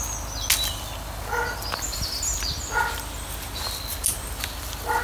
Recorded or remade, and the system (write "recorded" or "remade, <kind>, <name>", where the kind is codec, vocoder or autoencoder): recorded